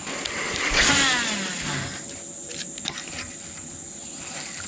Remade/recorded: remade